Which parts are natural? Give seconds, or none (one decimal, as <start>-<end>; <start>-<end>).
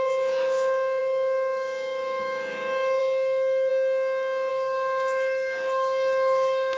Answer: 3.7-4.5